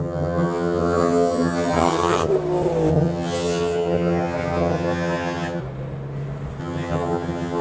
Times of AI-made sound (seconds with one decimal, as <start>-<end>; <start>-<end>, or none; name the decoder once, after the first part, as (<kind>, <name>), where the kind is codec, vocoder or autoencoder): 0.0-2.3 (vocoder, HiFi-GAN); 2.9-5.6; 6.6-7.6